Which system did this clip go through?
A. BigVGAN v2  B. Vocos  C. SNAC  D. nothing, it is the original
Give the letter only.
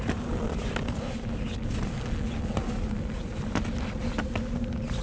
D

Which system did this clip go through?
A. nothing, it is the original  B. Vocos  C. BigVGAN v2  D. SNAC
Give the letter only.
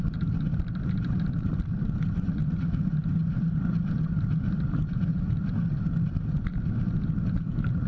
C